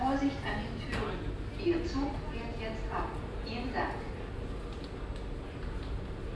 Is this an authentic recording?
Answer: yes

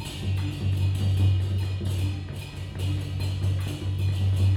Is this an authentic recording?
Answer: yes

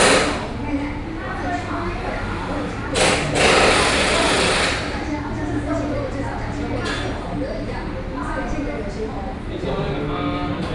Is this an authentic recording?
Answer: yes